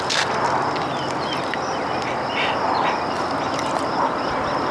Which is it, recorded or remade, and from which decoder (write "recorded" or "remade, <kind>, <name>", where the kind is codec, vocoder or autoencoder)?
recorded